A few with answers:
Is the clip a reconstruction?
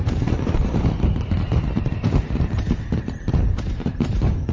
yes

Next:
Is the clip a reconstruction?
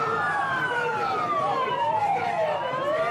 yes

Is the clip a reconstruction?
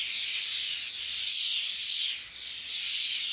no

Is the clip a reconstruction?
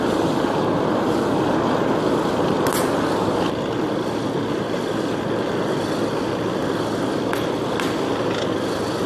no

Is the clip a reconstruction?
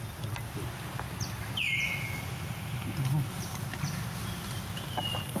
no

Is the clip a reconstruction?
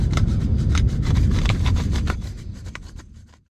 yes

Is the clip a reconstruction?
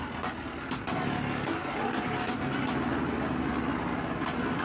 no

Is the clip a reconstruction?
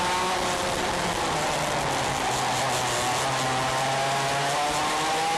no